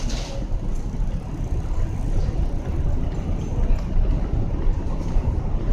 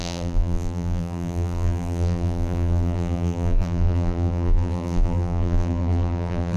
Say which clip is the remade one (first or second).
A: second